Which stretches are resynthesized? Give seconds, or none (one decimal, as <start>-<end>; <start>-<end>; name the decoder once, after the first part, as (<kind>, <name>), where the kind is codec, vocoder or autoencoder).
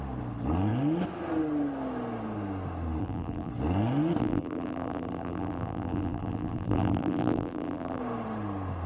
3.0-3.5 (vocoder, BigVGAN v2); 4.2-8.0